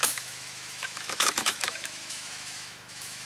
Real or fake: fake